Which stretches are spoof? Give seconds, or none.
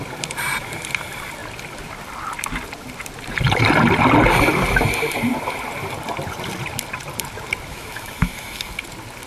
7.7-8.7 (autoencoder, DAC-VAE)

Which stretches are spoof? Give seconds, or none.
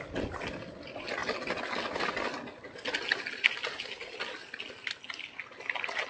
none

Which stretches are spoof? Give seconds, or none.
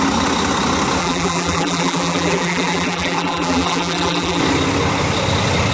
1.0-4.4 (vocoder, BigVGAN v2)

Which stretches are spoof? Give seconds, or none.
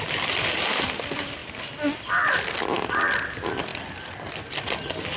none